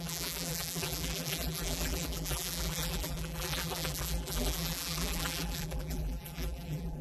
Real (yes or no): no